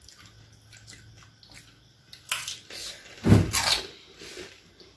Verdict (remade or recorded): recorded